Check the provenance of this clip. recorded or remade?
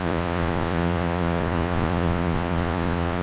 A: remade